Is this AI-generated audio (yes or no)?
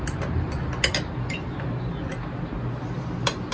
no